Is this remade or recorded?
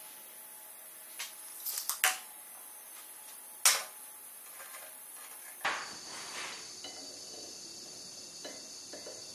recorded